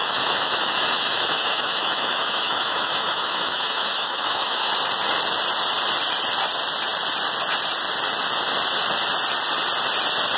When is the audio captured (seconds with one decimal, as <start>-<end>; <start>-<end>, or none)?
4.7-10.4